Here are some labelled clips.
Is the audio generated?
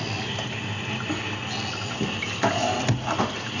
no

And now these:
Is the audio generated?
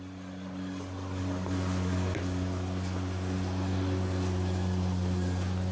no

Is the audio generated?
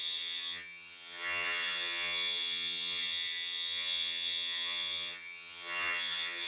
yes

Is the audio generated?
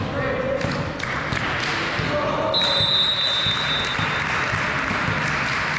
no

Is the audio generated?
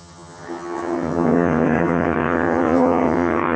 yes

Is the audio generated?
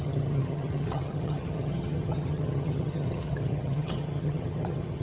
yes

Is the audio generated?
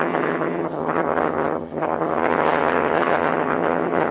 yes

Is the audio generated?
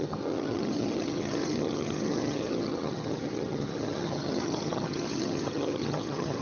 yes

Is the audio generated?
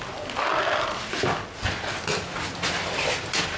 no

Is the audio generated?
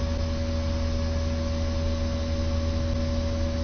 no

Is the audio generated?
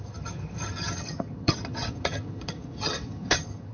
yes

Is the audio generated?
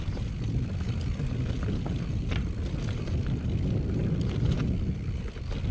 no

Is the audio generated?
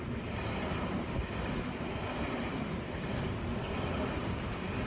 no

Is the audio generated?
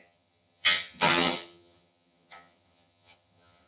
yes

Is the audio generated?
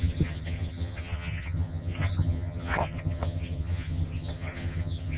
yes